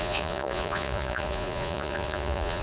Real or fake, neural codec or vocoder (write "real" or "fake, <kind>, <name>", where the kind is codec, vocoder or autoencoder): fake, vocoder, Vocos